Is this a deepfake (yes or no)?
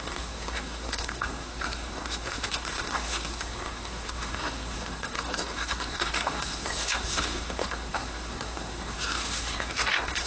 yes